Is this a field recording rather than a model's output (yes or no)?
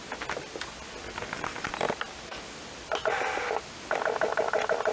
yes